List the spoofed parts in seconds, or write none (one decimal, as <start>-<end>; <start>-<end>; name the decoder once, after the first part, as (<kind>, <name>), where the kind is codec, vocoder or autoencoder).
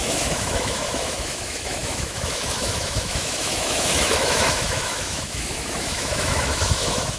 0.0-7.2 (autoencoder, DAC-VAE)